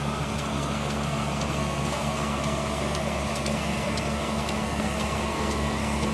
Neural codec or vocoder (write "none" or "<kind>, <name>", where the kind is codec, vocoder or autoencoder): codec, SNAC